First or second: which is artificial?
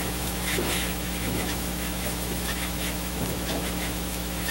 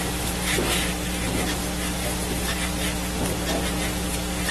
first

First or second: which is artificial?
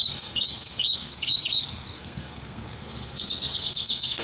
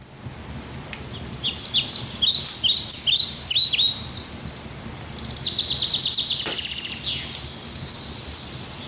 first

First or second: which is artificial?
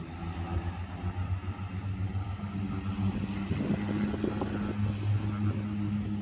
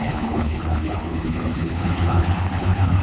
second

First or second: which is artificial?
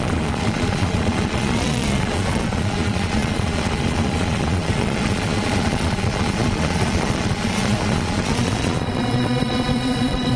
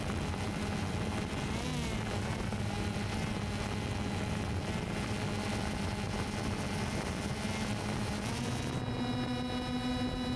first